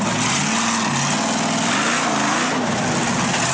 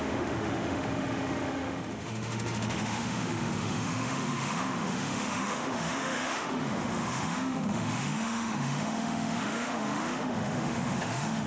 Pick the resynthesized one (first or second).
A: second